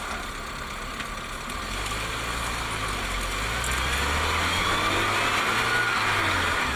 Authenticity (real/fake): real